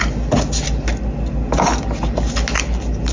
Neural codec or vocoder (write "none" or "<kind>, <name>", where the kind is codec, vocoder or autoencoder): none